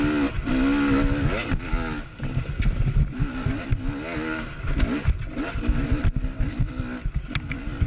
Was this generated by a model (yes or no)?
no